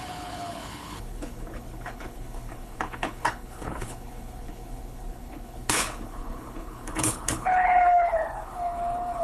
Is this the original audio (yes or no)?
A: no